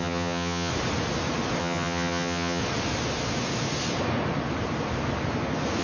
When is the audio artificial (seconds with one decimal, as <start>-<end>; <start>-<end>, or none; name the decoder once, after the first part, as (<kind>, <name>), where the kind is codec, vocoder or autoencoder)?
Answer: 0.0-0.7 (vocoder, HiFi-GAN); 1.6-2.6